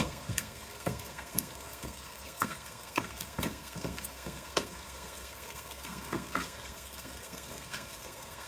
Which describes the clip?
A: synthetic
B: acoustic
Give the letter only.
A